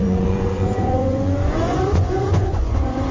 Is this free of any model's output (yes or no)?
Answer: no